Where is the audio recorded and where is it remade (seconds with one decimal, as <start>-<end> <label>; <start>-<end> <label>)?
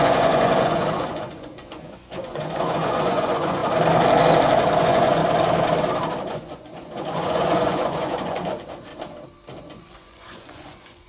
0.0-3.6 remade; 3.6-4.8 recorded; 4.8-5.2 remade; 5.2-6.3 recorded; 6.3-8.9 remade; 8.9-9.6 recorded; 9.6-11.1 remade